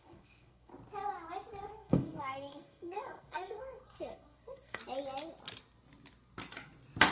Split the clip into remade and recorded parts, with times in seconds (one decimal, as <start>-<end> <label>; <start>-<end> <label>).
0.0-0.7 remade; 0.7-1.7 recorded; 1.7-4.8 remade; 4.8-7.1 recorded